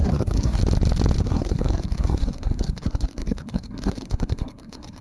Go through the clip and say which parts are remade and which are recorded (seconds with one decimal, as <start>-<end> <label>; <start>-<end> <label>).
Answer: 0.0-0.6 remade; 0.6-1.2 recorded; 1.2-5.0 remade